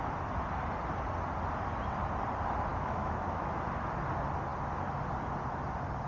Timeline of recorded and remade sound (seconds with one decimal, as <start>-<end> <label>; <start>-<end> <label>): 0.0-2.7 recorded; 2.7-3.5 remade; 3.5-6.1 recorded